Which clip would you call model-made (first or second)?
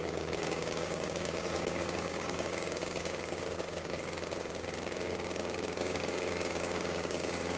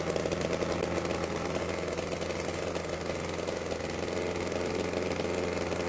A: first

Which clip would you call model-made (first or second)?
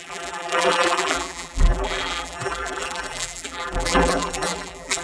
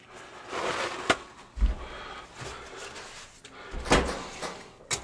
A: first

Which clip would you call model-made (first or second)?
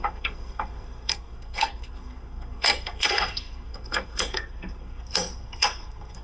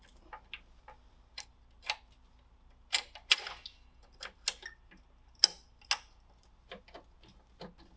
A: first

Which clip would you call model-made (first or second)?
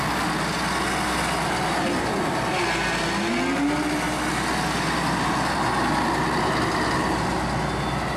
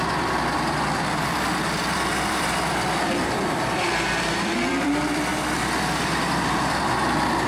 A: second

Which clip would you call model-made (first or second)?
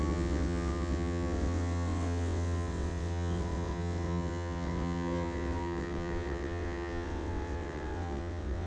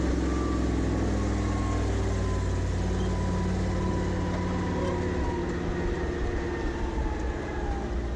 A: first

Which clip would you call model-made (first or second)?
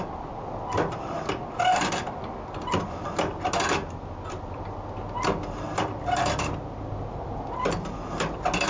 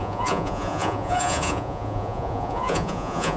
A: second